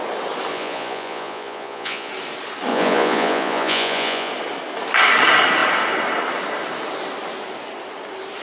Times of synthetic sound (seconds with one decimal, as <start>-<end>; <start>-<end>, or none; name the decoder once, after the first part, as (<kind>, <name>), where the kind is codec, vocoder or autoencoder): 0.5-2.1 (vocoder, Vocos); 2.7-4.3